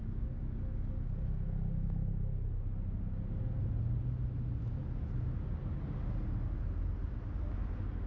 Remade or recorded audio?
recorded